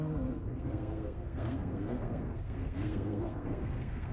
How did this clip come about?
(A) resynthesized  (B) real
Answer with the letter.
A